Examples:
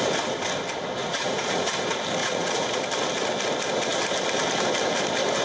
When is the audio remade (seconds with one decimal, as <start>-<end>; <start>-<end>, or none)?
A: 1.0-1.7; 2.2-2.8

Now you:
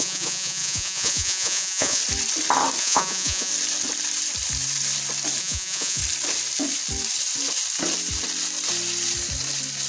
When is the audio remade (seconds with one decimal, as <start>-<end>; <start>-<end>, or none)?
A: 0.0-2.0; 2.8-3.5; 5.4-6.0

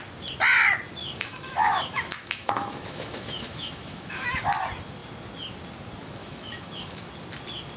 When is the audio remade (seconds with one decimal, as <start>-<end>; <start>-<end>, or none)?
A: 1.0-4.5; 6.2-7.1